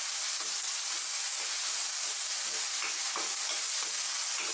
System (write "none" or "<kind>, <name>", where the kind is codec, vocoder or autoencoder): none